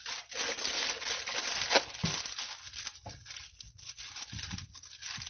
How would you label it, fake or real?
real